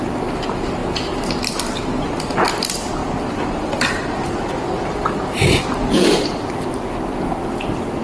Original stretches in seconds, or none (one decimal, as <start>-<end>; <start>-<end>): 0.0-8.0